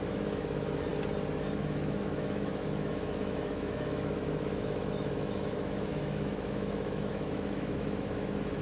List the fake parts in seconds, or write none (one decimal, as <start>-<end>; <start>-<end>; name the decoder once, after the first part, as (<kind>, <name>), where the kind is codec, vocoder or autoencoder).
0.0-0.9 (autoencoder, DAC-VAE); 1.6-8.6